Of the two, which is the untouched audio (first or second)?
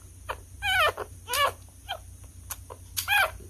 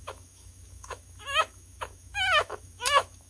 first